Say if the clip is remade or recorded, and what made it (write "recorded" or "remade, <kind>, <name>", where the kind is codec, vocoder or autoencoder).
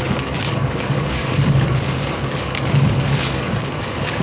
remade, codec, DAC